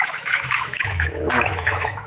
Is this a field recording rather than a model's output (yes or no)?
no